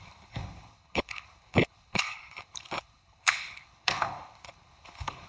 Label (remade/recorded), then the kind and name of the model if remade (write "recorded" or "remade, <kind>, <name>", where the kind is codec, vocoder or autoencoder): remade, codec, HILCodec